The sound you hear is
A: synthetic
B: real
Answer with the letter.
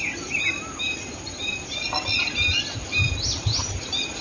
B